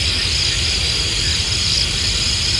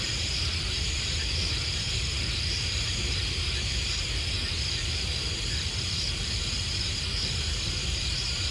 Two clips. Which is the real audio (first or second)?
first